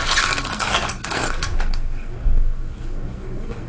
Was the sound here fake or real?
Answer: fake